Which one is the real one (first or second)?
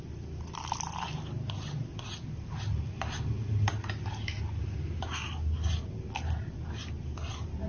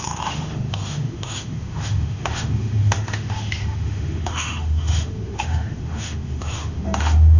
first